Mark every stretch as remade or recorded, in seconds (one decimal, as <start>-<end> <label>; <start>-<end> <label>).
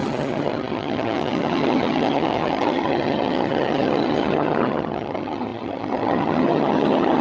0.0-7.2 remade